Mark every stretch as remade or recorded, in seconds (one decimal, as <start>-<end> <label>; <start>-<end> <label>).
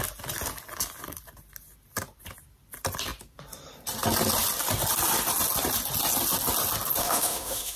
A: 0.0-7.0 recorded; 7.0-7.8 remade